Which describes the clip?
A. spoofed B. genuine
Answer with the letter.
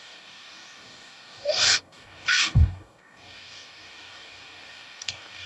A